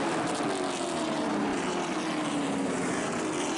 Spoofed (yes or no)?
no